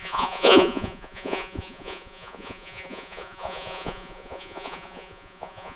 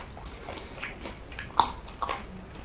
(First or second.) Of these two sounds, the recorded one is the second